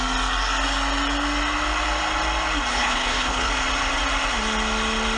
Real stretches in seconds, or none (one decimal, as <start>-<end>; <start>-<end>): 0.0-2.7; 3.5-5.2